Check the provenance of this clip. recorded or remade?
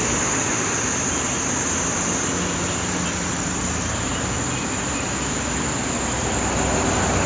recorded